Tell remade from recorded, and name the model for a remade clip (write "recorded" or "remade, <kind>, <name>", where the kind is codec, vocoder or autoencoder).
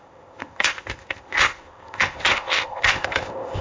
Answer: remade, codec, ZipCodec